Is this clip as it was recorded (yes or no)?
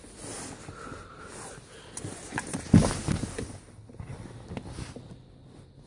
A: yes